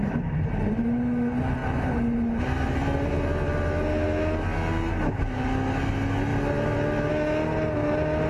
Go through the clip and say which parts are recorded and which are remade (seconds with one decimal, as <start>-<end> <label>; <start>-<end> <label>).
0.0-8.3 recorded